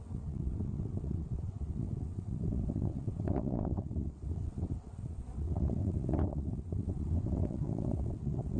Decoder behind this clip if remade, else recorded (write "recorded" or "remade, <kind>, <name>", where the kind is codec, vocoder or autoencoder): remade, vocoder, WaveNeXt